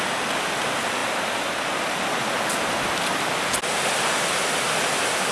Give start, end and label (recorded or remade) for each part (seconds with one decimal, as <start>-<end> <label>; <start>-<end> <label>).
0.0-5.3 recorded